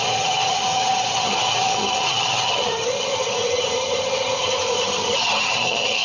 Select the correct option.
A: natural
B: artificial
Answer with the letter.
B